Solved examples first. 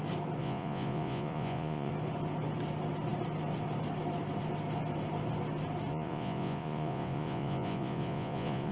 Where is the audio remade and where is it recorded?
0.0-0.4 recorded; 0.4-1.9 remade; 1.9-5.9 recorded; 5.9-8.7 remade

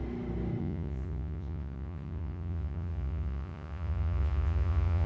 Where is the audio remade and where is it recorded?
0.0-0.6 recorded; 0.6-5.1 remade

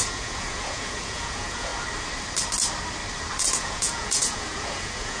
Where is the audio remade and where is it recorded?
0.0-1.7 remade; 1.7-3.4 recorded; 3.4-5.2 remade

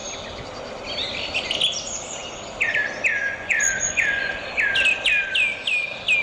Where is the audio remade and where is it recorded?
0.0-3.2 recorded; 3.2-4.3 remade; 4.3-6.2 recorded

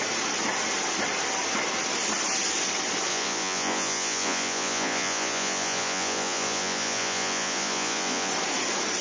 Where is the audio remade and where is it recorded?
0.0-3.1 recorded; 3.1-8.3 remade; 8.3-9.0 recorded

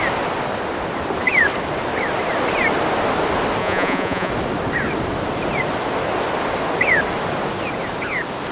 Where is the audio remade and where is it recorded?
0.0-3.6 recorded; 3.6-4.3 remade; 4.3-8.5 recorded

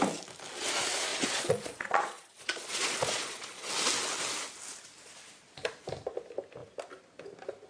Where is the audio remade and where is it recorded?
0.0-1.1 recorded; 1.1-3.7 remade; 3.7-7.7 recorded